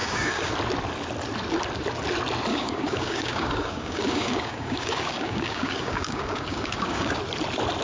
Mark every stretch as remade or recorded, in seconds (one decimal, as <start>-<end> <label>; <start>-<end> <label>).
0.0-0.5 remade; 0.5-2.5 recorded; 2.5-7.2 remade; 7.2-7.8 recorded